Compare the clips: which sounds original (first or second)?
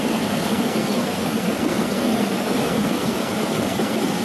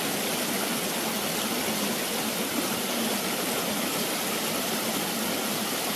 second